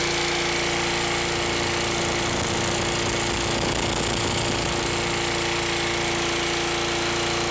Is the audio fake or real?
real